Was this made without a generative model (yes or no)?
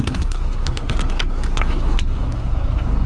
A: no